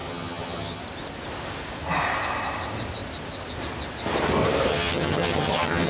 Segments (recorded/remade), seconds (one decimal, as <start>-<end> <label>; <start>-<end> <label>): 0.0-0.8 remade; 0.8-4.7 recorded; 4.7-5.9 remade